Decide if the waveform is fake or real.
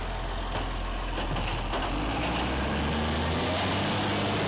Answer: real